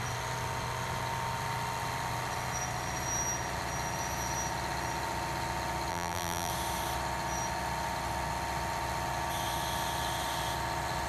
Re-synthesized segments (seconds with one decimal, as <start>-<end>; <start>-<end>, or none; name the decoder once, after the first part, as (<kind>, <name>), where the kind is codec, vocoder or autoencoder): 5.9-6.5 (vocoder, BigVGAN v2)